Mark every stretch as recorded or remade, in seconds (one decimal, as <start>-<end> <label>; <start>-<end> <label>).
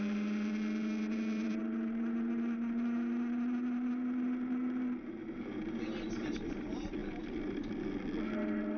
0.0-1.6 remade; 1.6-6.2 recorded; 6.2-7.0 remade; 7.0-8.8 recorded